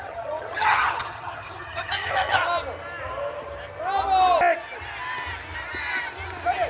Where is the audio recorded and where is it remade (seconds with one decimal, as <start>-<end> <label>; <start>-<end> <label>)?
0.0-2.4 remade; 2.4-6.7 recorded